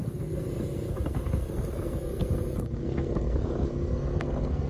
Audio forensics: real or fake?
fake